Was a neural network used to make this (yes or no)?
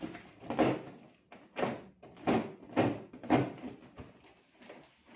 no